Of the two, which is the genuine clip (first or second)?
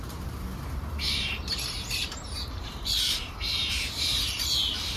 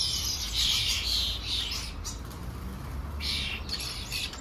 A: second